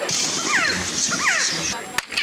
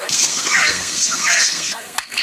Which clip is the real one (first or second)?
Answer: first